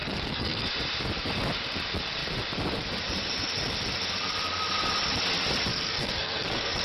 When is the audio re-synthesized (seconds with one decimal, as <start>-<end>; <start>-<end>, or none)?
0.0-0.7; 5.7-6.8